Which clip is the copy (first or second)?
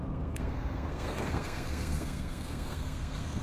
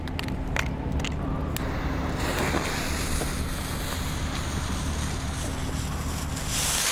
first